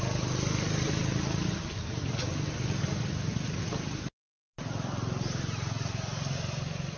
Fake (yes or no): no